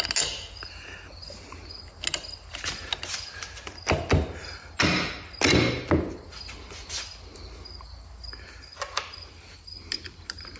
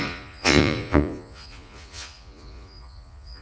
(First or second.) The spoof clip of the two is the second